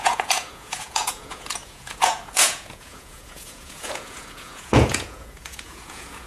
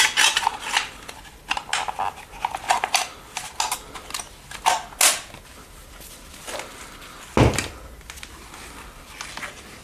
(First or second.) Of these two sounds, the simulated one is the first